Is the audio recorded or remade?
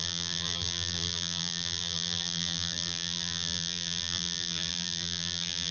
remade